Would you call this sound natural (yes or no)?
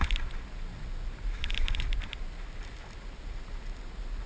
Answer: yes